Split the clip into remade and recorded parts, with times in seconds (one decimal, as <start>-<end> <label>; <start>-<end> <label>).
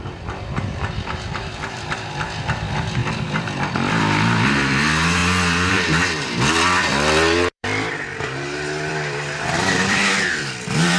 0.0-3.0 remade; 3.0-4.0 recorded; 4.0-5.2 remade; 5.2-5.7 recorded; 5.7-8.1 remade; 8.1-8.9 recorded; 8.9-11.0 remade